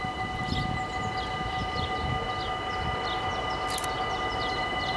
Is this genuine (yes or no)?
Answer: yes